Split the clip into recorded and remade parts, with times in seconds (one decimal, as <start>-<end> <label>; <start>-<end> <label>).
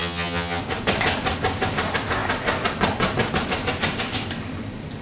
0.0-0.6 remade; 0.6-5.0 recorded